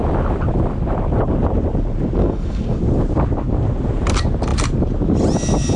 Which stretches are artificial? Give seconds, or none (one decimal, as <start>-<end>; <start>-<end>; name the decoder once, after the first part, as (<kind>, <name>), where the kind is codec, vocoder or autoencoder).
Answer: 2.2-2.8 (codec, SNAC)